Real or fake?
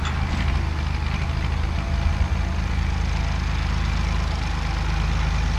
real